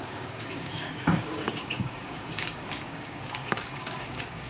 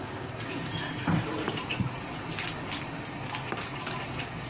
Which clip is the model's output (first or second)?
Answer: first